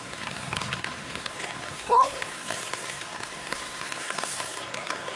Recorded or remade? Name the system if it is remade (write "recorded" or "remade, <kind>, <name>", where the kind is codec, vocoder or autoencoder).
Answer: remade, codec, SNAC